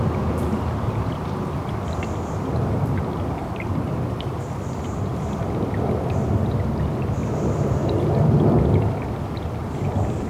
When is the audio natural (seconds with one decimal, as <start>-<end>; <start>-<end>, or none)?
0.0-3.4; 5.4-7.2; 8.6-9.6